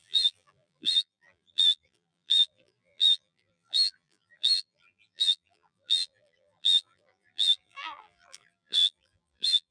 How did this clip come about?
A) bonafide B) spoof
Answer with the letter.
B